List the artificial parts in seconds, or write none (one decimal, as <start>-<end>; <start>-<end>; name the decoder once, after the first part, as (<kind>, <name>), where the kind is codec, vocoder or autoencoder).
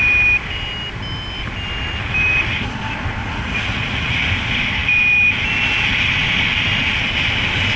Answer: 3.2-4.3 (vocoder, Vocos)